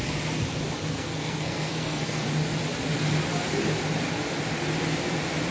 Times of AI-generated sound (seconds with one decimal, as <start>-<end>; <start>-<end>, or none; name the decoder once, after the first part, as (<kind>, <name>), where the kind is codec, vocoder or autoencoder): 0.9-2.3 (codec, SNAC)